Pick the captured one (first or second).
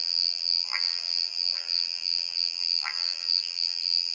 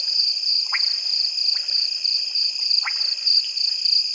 second